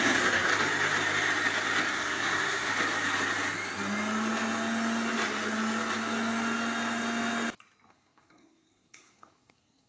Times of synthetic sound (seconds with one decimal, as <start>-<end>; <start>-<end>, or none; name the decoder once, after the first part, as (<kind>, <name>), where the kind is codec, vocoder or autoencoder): 0.0-0.5 (codec, SNAC); 1.9-2.7; 7.9-9.9